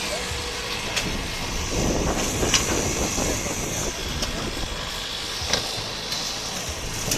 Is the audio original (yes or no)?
yes